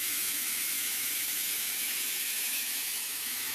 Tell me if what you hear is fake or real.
fake